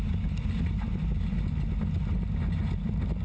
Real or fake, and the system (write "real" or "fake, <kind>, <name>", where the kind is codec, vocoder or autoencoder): real